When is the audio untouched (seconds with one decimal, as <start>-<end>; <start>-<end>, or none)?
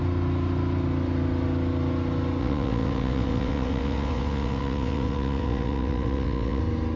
0.0-2.4; 6.6-7.0